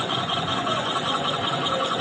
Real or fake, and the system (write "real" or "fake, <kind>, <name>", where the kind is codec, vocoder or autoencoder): fake, vocoder, Vocos